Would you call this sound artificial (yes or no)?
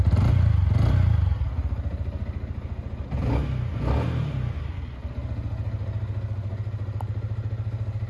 no